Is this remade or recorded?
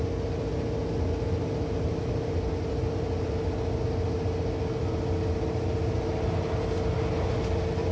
recorded